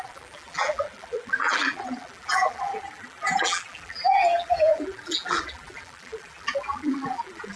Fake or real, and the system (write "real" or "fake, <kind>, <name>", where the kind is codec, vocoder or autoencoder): fake, vocoder, BigVGAN v2